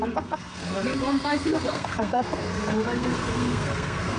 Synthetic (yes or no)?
yes